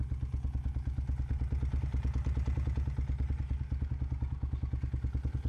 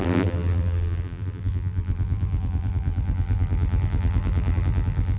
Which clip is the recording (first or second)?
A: first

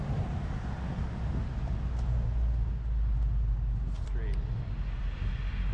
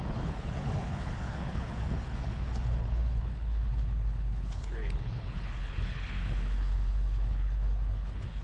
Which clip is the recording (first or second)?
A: first